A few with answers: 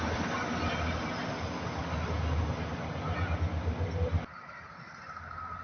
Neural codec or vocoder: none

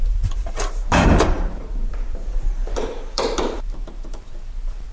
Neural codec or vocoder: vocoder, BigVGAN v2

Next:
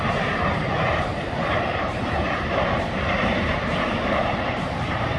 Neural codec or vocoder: vocoder, BigVGAN v2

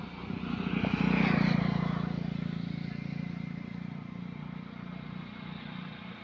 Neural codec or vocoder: none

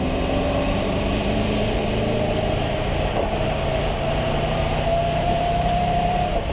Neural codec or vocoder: vocoder, BigVGAN v2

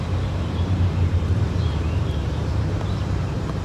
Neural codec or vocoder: vocoder, BigVGAN v2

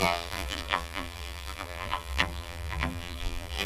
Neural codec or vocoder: vocoder, BigVGAN v2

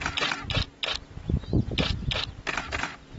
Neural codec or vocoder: none